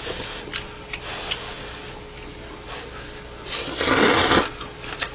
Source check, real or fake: real